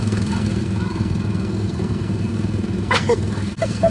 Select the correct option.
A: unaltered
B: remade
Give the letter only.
B